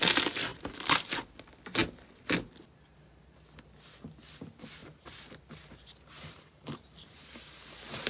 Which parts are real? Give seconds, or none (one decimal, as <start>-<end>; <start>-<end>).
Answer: 0.0-4.8